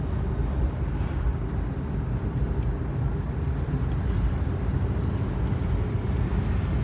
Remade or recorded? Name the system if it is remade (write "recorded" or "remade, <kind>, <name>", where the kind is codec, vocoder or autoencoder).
recorded